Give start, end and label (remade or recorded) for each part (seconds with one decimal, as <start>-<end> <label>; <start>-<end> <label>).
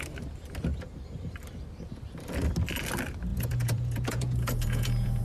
0.0-3.3 recorded; 3.3-5.2 remade